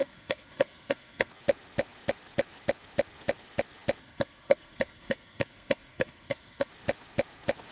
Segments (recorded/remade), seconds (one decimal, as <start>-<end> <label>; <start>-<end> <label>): 0.0-1.3 remade; 1.3-4.0 recorded; 4.0-6.7 remade; 6.7-7.7 recorded